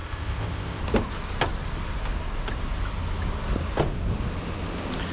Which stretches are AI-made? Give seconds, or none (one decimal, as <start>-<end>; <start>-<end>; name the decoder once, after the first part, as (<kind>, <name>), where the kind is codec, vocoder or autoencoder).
0.0-0.8 (codec, ZipCodec)